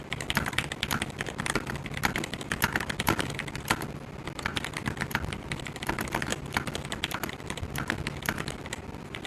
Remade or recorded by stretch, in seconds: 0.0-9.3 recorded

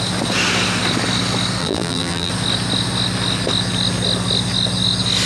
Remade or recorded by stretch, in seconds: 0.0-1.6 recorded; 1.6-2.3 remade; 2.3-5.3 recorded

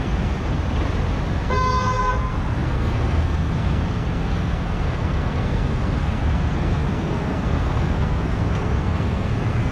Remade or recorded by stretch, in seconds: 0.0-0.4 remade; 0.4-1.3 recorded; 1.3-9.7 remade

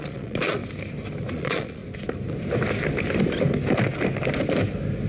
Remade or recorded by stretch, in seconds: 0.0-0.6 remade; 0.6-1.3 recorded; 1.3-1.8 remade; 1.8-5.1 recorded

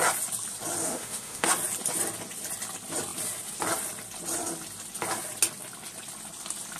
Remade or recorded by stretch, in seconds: 0.0-0.8 recorded; 0.8-1.5 remade; 1.5-6.8 recorded